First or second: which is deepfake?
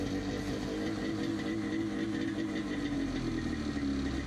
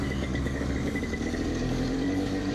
second